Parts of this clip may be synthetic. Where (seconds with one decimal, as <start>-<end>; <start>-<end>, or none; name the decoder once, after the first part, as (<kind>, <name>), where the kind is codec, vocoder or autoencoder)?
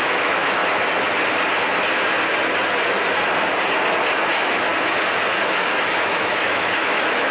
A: 0.0-0.6 (autoencoder, DAC-VAE); 4.3-4.7; 5.4-7.3